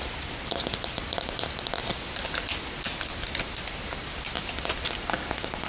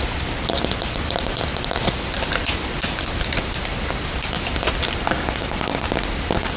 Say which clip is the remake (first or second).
second